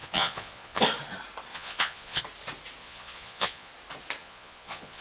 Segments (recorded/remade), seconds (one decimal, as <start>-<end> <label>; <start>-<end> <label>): 0.0-0.8 remade; 0.8-1.5 recorded; 1.5-2.2 remade; 2.2-2.8 recorded; 2.8-3.7 remade; 3.7-4.2 recorded; 4.2-5.0 remade

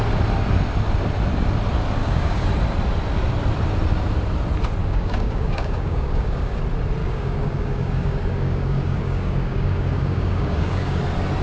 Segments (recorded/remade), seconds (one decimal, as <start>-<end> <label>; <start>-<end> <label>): 0.0-2.0 recorded; 2.0-2.5 remade; 2.5-4.8 recorded; 4.8-6.6 remade; 6.6-7.0 recorded; 7.0-11.0 remade; 11.0-11.4 recorded

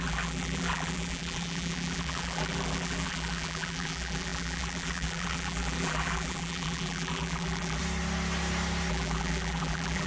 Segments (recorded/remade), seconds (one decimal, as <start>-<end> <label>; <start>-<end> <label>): 0.0-7.8 remade; 7.8-8.9 recorded; 8.9-10.1 remade

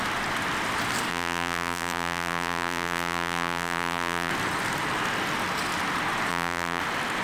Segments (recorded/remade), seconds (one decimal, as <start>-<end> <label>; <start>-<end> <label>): 0.0-1.1 recorded; 1.1-4.3 remade; 4.3-6.3 recorded; 6.3-6.8 remade; 6.8-7.2 recorded